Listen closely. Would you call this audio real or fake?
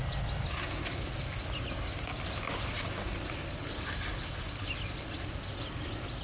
real